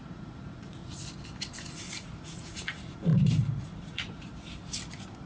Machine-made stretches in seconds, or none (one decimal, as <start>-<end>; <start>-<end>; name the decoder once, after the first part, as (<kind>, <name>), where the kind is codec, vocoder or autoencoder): 0.0-0.8 (vocoder, Vocos); 2.2-3.1; 3.8-4.3